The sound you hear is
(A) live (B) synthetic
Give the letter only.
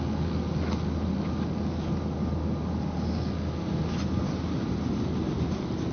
A